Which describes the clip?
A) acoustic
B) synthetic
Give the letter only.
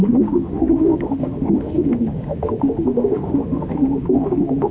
B